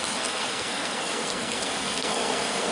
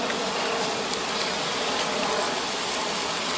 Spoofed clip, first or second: first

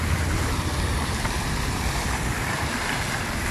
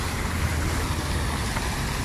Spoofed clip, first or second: first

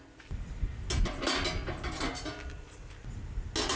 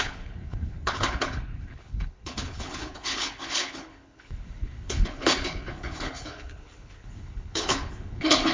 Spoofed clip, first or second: second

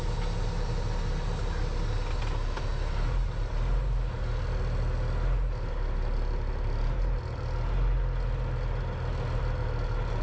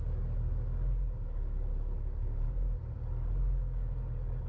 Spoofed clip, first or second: second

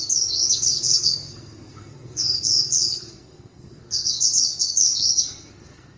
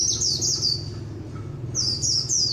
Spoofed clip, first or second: first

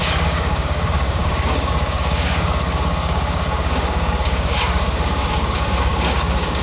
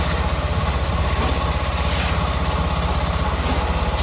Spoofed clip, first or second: first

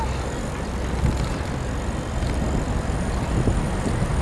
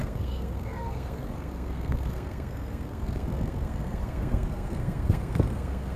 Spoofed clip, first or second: second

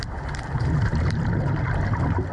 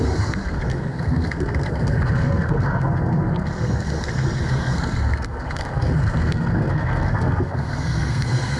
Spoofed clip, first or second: second